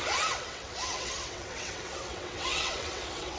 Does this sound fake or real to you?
fake